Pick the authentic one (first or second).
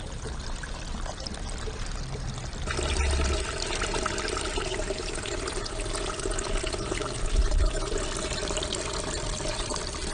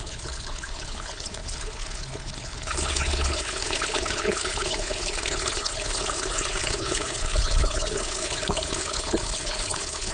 first